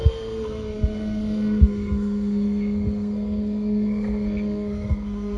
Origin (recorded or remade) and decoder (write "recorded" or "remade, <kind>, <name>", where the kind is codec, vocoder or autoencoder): remade, codec, SNAC